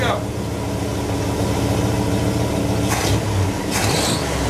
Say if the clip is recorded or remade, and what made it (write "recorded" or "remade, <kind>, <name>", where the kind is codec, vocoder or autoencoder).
recorded